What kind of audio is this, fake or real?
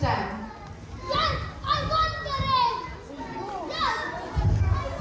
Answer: real